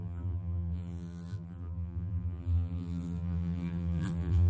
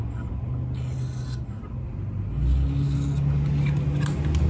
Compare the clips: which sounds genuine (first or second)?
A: second